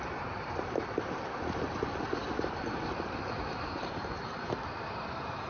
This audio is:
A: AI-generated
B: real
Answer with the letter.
A